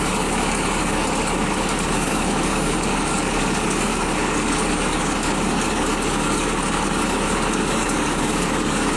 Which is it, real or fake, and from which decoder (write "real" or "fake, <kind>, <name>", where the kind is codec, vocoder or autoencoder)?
fake, codec, DAC